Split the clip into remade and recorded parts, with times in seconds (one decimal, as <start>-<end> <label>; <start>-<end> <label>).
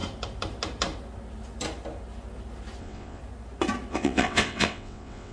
0.0-2.8 recorded; 2.8-3.2 remade; 3.2-3.9 recorded; 3.9-5.3 remade